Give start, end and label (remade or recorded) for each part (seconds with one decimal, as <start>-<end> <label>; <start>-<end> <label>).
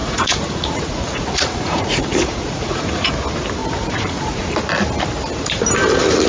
0.0-3.1 remade; 3.1-3.6 recorded; 3.6-4.6 remade; 4.6-6.3 recorded